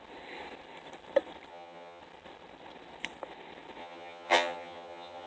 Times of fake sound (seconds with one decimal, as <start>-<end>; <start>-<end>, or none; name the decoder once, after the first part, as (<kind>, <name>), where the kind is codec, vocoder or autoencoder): 1.5-2.0 (vocoder, HiFi-GAN); 3.8-5.3

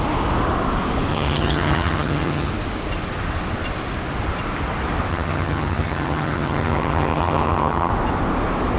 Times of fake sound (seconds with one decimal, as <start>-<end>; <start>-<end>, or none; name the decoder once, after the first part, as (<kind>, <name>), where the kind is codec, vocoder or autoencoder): 1.1-2.5 (vocoder, HiFi-GAN); 5.1-7.9

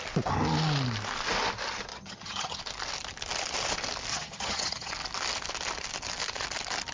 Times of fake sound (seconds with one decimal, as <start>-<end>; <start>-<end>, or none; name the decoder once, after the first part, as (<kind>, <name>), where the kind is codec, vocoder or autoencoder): 1.9-2.6 (vocoder, HiFi-GAN); 4.1-4.9

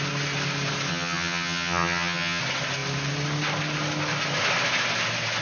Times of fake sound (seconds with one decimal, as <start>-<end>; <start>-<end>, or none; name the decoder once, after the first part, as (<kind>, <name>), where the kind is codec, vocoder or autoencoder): 0.9-2.4 (vocoder, HiFi-GAN)

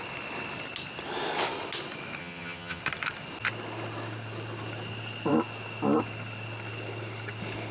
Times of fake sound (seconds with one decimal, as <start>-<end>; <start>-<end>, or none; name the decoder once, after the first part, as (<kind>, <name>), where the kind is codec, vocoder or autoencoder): 2.2-2.8 (vocoder, HiFi-GAN)